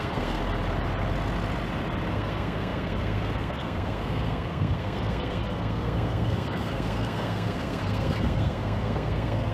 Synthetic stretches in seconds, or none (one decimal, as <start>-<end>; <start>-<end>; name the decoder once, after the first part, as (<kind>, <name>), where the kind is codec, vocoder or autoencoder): 0.0-0.4 (codec, SNAC); 2.1-9.5